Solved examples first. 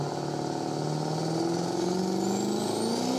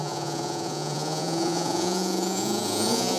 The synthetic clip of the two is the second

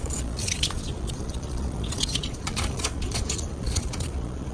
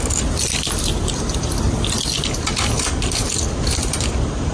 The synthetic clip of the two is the first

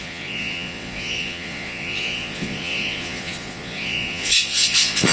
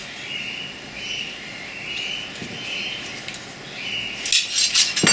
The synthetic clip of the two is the first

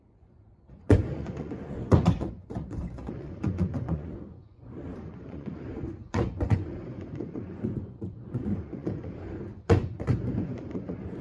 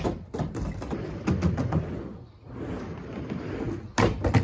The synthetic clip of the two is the first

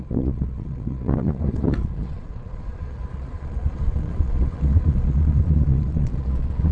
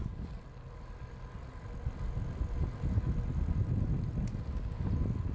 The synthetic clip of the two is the first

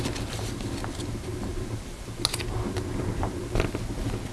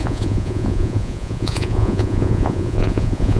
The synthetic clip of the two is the second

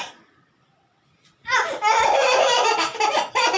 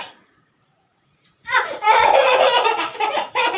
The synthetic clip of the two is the second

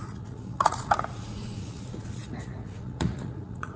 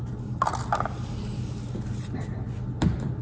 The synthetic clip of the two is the first